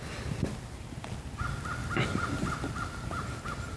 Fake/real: real